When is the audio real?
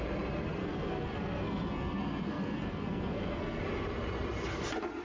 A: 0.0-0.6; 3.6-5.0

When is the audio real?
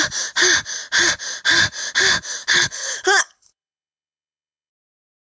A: 0.0-2.4; 4.7-5.4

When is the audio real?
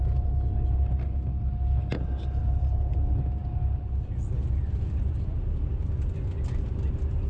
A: 0.0-7.3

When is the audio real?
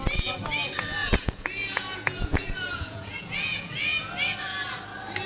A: 0.0-1.0; 4.1-5.3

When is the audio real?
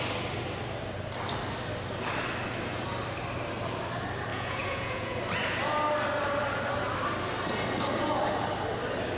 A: 0.0-4.3; 5.2-9.2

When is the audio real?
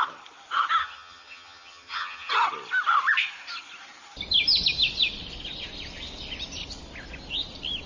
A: 0.0-0.8; 2.3-7.9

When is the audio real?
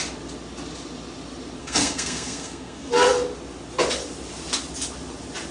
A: 0.0-1.6; 2.9-5.5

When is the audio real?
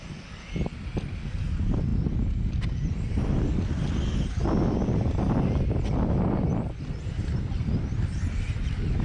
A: 0.0-9.0